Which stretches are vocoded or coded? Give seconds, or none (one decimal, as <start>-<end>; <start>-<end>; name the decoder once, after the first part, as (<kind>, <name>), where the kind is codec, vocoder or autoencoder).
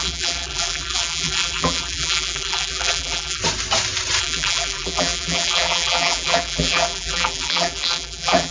0.0-3.4 (vocoder, BigVGAN v2); 4.2-8.5